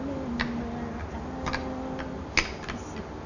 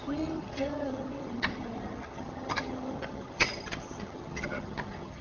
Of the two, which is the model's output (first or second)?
second